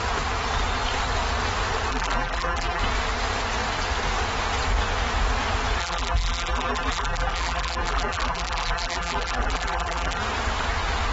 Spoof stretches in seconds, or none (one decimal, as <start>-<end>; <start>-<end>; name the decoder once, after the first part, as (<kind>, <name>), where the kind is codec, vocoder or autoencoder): 1.9-2.8 (vocoder, BigVGAN v2); 5.8-10.2